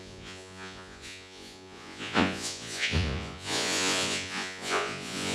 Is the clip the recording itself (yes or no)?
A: no